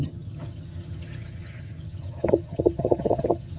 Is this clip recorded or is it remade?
remade